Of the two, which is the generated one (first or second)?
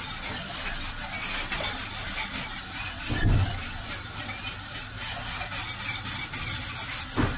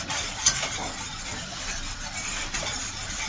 second